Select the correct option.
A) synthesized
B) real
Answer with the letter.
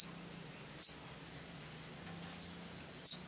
B